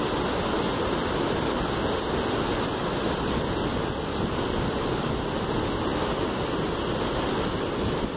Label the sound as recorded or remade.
recorded